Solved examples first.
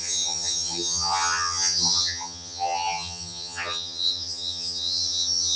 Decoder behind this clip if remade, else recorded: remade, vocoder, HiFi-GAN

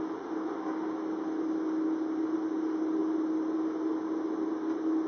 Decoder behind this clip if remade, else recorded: recorded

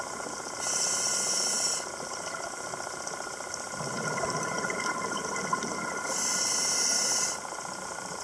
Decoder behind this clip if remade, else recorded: recorded